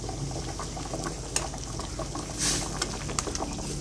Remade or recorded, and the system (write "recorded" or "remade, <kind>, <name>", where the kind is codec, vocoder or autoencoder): recorded